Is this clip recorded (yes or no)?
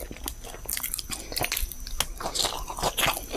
yes